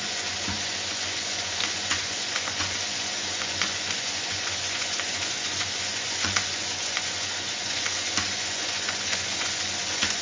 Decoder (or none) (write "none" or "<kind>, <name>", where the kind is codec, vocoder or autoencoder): vocoder, Vocos